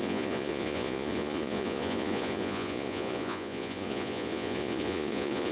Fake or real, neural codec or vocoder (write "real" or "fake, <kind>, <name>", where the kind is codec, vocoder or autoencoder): fake, vocoder, Vocos